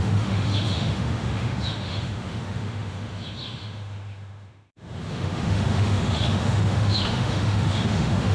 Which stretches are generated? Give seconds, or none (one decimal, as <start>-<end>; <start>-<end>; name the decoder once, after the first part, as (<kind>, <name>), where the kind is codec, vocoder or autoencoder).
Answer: 0.0-8.3 (autoencoder, DAC-VAE)